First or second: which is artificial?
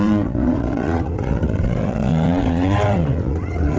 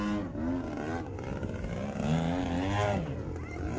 first